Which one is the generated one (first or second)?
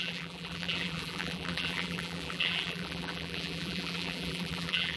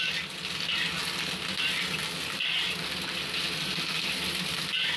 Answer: first